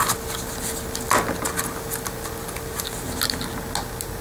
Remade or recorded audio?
recorded